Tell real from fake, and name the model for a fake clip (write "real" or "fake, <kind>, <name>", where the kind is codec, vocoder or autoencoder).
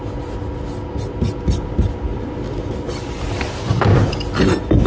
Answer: real